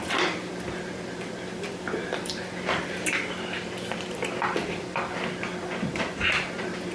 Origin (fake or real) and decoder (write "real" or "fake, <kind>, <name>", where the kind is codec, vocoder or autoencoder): real